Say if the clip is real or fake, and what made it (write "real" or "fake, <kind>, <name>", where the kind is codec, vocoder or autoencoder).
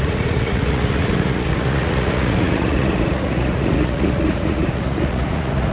fake, vocoder, Vocos